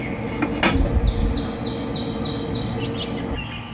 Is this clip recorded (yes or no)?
yes